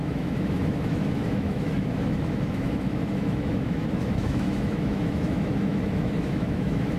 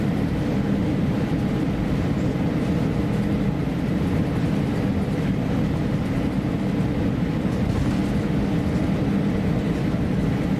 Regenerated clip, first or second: first